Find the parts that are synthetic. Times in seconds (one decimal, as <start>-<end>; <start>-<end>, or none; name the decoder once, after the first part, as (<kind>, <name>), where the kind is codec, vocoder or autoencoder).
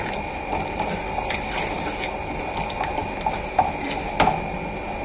none